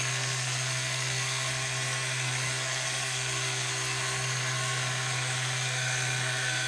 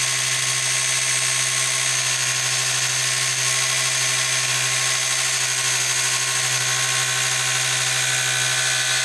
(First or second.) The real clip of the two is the second